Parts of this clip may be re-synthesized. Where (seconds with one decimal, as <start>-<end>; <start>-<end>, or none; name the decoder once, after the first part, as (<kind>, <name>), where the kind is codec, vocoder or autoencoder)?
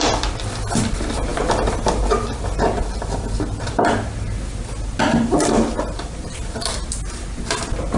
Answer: none